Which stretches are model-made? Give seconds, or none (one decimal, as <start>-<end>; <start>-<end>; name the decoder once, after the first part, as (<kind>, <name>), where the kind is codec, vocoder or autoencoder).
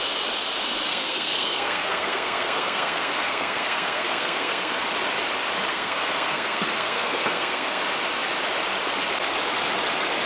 0.9-4.8 (codec, SNAC); 5.7-7.8